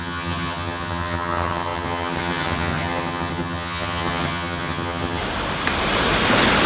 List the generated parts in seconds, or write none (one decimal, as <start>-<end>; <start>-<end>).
0.0-5.2